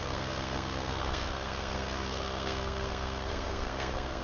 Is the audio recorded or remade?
remade